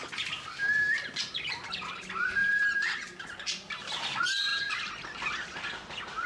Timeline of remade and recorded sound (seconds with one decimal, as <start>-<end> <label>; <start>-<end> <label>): 0.0-2.4 recorded; 2.4-3.2 remade; 3.2-4.5 recorded; 4.5-6.3 remade